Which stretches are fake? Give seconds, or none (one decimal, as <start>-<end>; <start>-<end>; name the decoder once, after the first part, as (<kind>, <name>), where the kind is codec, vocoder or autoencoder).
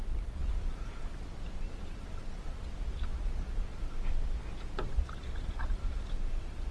none